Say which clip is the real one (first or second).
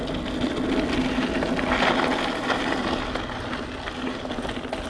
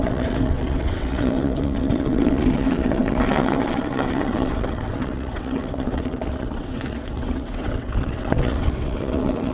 first